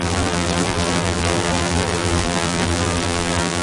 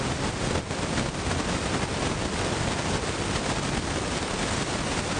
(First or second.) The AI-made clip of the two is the first